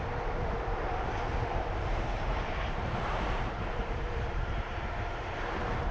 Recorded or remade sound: remade